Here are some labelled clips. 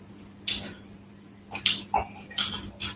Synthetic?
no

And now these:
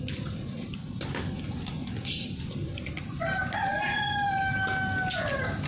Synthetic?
no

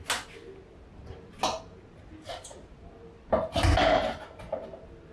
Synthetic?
no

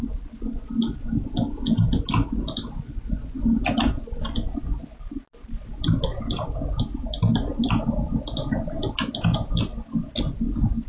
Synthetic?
no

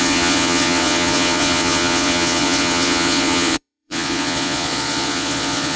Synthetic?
yes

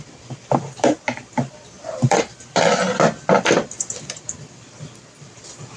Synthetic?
yes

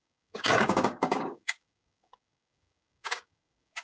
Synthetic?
yes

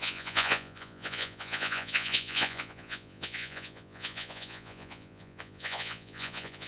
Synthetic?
yes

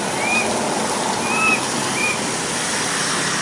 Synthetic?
no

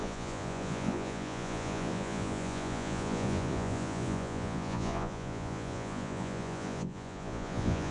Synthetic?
yes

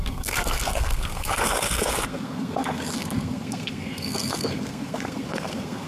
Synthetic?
yes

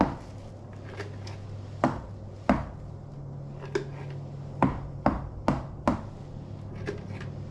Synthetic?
no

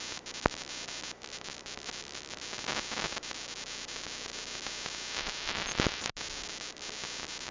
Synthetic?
no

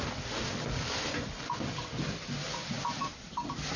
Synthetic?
no